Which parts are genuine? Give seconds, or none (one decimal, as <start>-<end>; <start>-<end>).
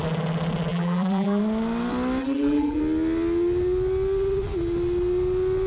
0.0-0.7; 1.4-2.2; 2.8-5.7